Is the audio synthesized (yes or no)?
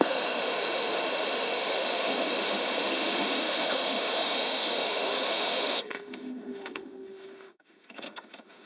yes